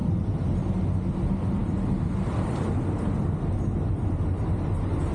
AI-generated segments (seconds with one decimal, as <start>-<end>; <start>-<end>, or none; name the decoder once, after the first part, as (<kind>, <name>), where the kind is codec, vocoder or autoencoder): none